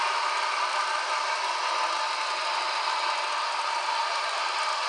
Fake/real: real